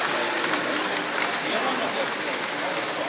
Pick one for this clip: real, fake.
fake